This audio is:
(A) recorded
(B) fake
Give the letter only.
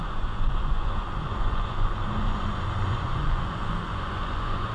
B